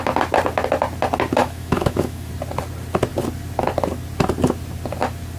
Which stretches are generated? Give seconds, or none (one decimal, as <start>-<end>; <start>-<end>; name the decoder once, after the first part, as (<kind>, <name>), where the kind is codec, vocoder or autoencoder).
1.4-2.3 (autoencoder, DAC-VAE)